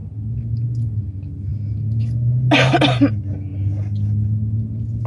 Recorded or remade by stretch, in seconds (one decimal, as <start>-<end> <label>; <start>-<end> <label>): 0.0-5.1 recorded

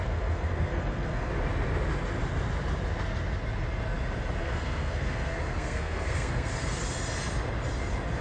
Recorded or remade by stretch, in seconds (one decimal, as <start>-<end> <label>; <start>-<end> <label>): 0.0-1.3 remade; 1.3-4.4 recorded; 4.4-6.5 remade; 6.5-8.2 recorded

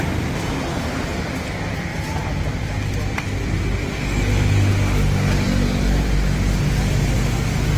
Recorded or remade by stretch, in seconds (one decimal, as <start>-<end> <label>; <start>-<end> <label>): 0.0-7.8 recorded

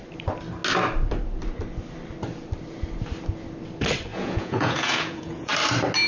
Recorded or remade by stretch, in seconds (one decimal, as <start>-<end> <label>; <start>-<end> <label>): 0.0-4.1 recorded; 4.1-5.5 remade; 5.5-6.1 recorded

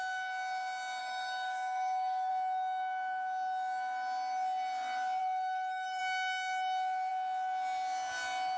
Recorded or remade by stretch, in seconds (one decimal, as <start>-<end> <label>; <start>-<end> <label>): 0.0-1.0 recorded; 1.0-2.3 remade; 2.3-5.2 recorded; 5.2-6.0 remade; 6.0-8.6 recorded

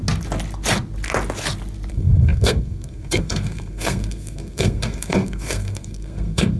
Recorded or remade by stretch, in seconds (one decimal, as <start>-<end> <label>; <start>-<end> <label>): 0.0-1.9 recorded; 1.9-6.6 remade

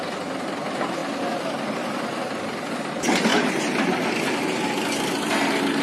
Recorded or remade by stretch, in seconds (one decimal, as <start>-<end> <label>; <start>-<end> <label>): 0.0-5.8 recorded